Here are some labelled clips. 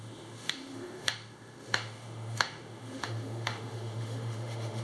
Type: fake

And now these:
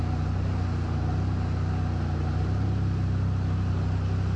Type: real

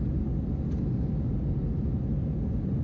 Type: real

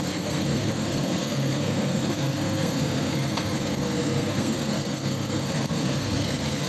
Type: fake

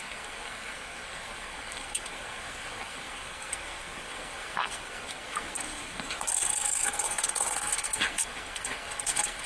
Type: fake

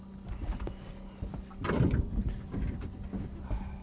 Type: real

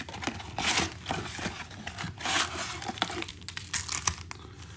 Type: real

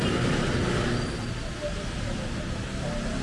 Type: real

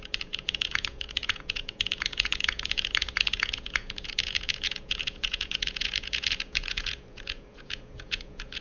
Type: fake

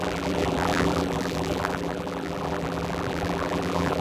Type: fake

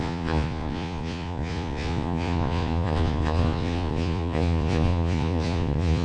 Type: fake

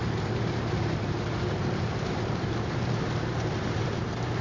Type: fake